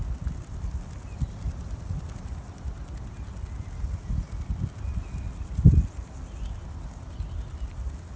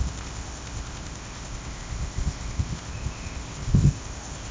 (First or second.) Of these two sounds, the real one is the first